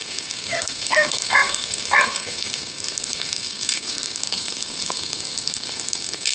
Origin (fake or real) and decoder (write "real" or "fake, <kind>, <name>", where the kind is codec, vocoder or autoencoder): fake, codec, SNAC